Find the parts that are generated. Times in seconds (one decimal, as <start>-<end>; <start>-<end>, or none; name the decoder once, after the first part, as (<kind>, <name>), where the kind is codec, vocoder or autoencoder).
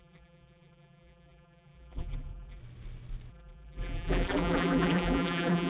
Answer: 0.0-2.6 (vocoder, BigVGAN v2); 3.3-5.7